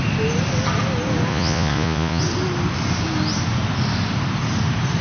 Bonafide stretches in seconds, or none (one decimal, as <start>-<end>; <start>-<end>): 0.0-1.3; 2.2-5.0